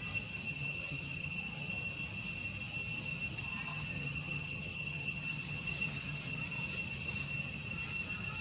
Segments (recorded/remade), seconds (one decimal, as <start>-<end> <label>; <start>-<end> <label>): 0.0-0.5 recorded; 0.5-1.7 remade; 1.7-3.7 recorded; 3.7-6.4 remade; 6.4-8.4 recorded